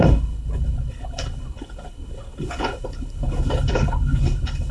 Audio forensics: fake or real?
fake